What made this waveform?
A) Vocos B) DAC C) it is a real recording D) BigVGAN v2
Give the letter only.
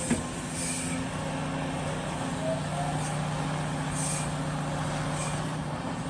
C